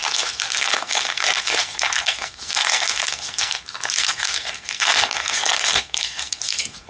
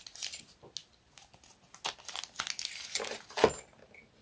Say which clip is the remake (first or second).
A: first